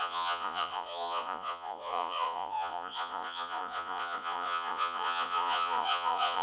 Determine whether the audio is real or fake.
fake